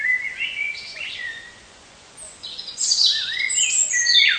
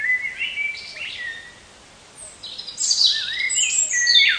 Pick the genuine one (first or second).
second